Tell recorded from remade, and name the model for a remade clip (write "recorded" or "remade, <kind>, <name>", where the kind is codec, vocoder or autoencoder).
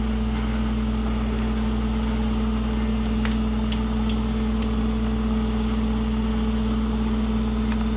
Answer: recorded